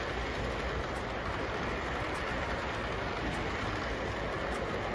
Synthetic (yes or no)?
no